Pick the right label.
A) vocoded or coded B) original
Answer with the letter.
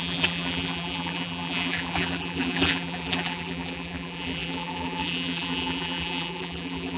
A